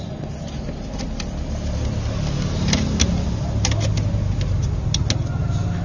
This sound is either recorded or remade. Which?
recorded